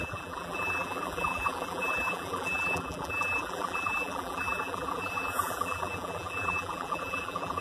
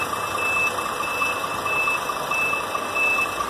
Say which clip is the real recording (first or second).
second